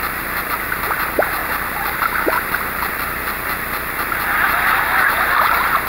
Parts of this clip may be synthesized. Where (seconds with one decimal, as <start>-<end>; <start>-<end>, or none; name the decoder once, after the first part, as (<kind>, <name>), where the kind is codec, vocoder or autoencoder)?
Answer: none